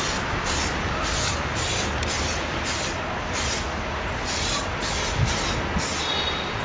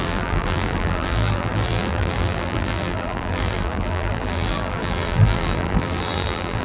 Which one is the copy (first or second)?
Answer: second